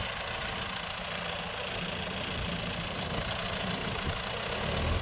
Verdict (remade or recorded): recorded